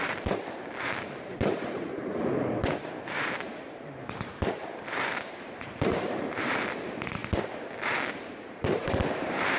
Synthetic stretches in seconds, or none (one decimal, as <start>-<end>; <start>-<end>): 0.0-7.2; 8.1-9.6